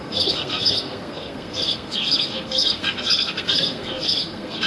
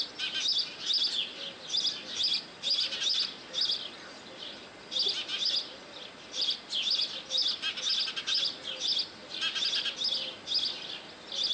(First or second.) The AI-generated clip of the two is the first